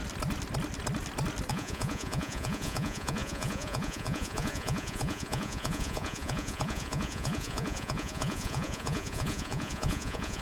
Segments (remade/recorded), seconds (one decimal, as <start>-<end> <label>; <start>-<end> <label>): 0.0-1.5 recorded; 1.5-10.4 remade